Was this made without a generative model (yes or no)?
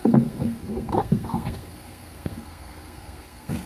no